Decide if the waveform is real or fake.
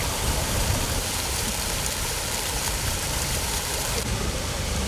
fake